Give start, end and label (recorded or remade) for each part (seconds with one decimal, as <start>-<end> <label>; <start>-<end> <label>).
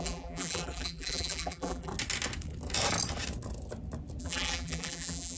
0.0-1.9 remade; 1.9-4.2 recorded; 4.2-5.4 remade